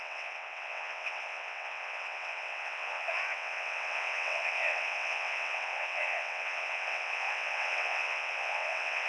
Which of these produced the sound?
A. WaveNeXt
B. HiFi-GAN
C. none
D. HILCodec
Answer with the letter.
A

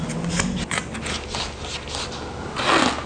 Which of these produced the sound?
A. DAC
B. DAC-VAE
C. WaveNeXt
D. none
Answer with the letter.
D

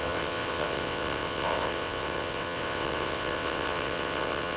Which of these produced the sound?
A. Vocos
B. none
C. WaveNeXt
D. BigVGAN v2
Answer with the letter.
C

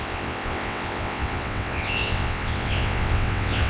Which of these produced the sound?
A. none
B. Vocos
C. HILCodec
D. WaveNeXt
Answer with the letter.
D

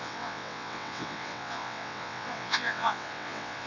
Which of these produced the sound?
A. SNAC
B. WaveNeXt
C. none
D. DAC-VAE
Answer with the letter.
B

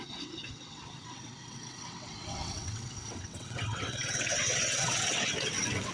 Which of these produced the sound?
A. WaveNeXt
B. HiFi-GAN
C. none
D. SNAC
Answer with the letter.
A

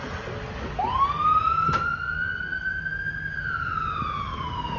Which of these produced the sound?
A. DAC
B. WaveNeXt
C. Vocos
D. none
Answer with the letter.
D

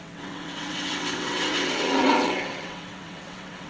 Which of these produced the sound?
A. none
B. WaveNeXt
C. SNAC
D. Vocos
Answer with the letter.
B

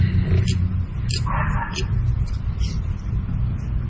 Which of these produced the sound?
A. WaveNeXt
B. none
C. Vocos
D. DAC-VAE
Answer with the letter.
B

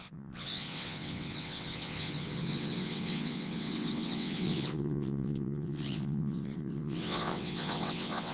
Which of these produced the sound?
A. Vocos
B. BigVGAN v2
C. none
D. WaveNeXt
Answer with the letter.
D